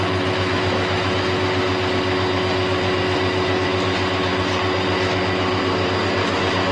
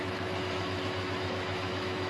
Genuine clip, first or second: first